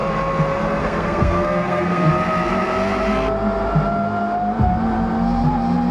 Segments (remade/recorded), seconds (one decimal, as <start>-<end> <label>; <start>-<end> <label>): 0.0-0.8 recorded; 0.8-2.1 remade; 2.1-5.9 recorded